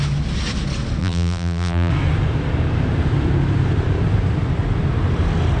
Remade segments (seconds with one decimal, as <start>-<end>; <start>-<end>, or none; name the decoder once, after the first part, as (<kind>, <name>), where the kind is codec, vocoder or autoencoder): 1.0-1.9 (vocoder, BigVGAN v2)